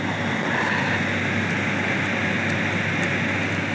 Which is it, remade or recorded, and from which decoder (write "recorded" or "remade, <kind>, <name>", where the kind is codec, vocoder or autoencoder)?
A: recorded